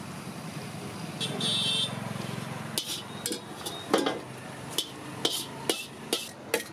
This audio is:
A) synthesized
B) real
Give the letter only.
B